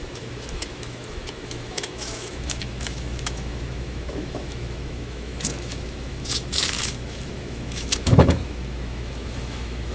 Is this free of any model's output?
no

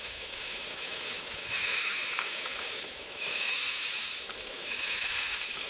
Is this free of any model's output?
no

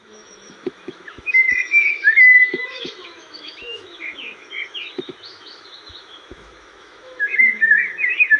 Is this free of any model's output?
no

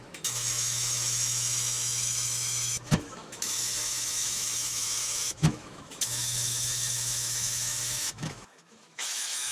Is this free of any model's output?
no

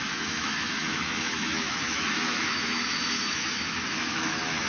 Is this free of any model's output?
no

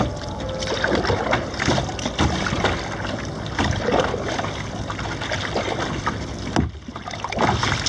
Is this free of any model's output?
yes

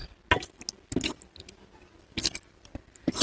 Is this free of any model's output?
yes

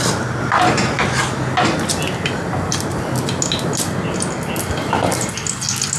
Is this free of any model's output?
yes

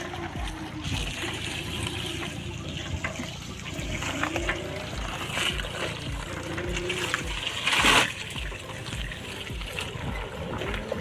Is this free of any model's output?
yes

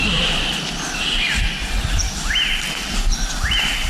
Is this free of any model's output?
yes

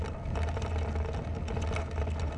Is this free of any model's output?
yes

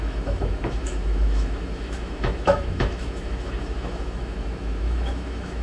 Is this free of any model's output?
no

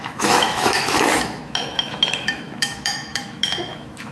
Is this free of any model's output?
no